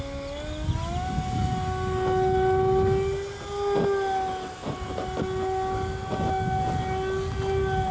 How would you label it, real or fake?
real